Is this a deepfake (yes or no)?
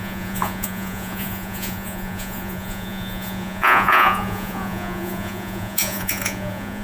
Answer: yes